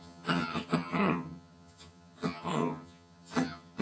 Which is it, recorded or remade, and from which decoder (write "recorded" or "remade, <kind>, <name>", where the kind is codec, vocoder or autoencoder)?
remade, vocoder, HiFi-GAN